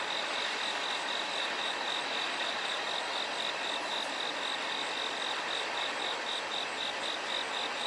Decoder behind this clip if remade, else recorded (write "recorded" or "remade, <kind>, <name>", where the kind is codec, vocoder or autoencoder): recorded